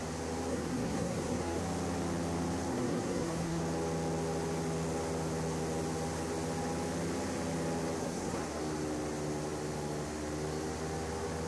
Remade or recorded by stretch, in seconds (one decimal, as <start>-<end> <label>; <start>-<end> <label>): 0.0-0.5 recorded; 0.5-1.6 remade; 1.6-2.7 recorded; 2.7-3.6 remade; 3.6-8.0 recorded; 8.0-8.6 remade; 8.6-11.5 recorded